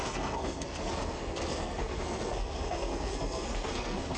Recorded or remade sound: remade